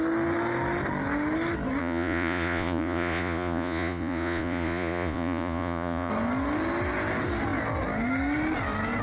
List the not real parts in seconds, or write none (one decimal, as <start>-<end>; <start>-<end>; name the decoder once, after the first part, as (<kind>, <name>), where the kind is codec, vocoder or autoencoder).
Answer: 1.8-6.1 (vocoder, Vocos)